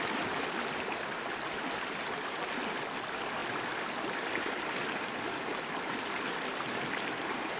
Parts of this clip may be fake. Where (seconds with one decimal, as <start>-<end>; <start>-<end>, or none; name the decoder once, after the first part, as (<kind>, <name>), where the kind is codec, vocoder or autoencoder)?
none